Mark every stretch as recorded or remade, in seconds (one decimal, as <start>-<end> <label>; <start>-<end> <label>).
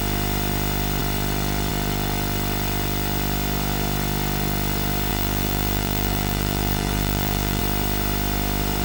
0.0-5.1 recorded; 5.1-7.6 remade; 7.6-8.8 recorded